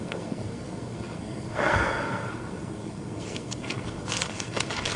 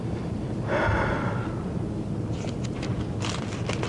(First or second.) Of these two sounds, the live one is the second